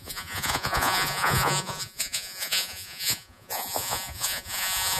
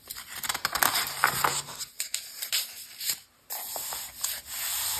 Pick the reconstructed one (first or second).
first